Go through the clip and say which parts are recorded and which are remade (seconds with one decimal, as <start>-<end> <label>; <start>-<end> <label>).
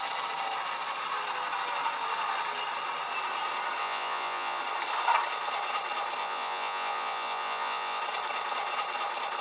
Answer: 0.0-3.8 recorded; 3.8-4.6 remade; 4.6-6.2 recorded; 6.2-8.0 remade; 8.0-9.4 recorded